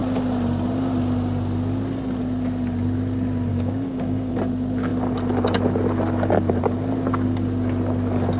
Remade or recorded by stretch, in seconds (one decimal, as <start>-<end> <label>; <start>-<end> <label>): 0.0-3.5 recorded; 3.5-4.3 remade; 4.3-8.4 recorded